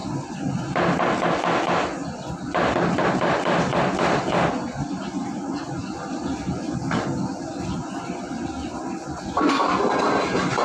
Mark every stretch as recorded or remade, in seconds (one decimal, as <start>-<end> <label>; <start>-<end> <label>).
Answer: 0.0-10.6 recorded

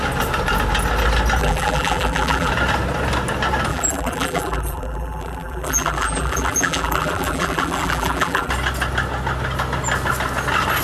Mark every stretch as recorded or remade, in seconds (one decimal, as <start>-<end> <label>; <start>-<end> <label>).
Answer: 0.0-1.4 recorded; 1.4-2.5 remade; 2.5-3.7 recorded; 3.7-8.5 remade; 8.5-10.8 recorded

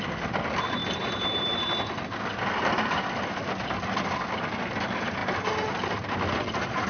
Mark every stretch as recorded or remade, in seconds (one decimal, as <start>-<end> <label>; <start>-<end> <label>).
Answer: 0.0-6.9 recorded

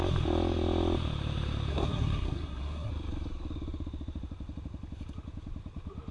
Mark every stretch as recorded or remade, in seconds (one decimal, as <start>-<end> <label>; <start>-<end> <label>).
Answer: 0.0-1.7 recorded; 1.7-2.9 remade; 2.9-6.1 recorded

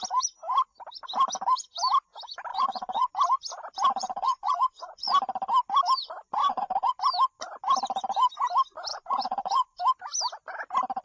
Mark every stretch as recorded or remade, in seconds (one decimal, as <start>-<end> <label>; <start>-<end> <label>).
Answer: 0.0-2.5 recorded; 2.5-3.1 remade; 3.1-4.0 recorded; 4.0-5.1 remade; 5.1-6.4 recorded; 6.4-6.9 remade; 6.9-8.9 recorded; 8.9-9.8 remade; 9.8-11.0 recorded

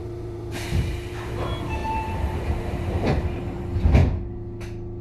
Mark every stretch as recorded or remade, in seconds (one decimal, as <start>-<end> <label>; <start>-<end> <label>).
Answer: 0.0-1.3 remade; 1.3-1.8 recorded; 1.8-3.6 remade; 3.6-5.0 recorded

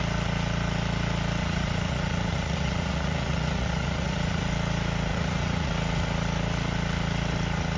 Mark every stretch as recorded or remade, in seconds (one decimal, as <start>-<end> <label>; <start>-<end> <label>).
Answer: 0.0-1.4 recorded; 1.4-4.4 remade; 4.4-5.1 recorded; 5.1-5.7 remade; 5.7-7.8 recorded

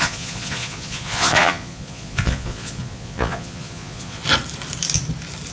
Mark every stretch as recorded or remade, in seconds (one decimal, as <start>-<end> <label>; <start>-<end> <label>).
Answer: 0.0-4.2 remade; 4.2-5.5 recorded